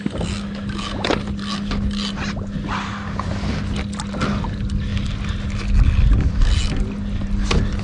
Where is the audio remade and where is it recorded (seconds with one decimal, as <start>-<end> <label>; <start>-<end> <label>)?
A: 0.0-7.8 recorded